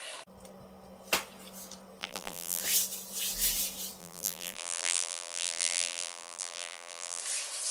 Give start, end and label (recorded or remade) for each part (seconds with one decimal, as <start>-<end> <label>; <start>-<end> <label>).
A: 0.0-2.0 recorded; 2.0-2.6 remade; 2.6-4.0 recorded; 4.0-7.2 remade; 7.2-7.7 recorded